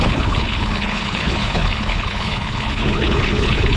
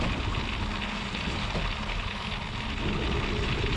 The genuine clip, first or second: second